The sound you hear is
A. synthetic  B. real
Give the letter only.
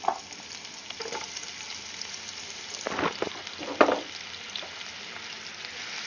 B